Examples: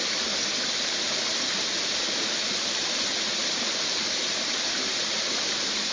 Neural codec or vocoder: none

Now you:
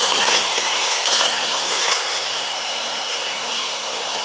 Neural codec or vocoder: codec, SNAC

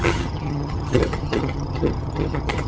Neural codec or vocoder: vocoder, HiFi-GAN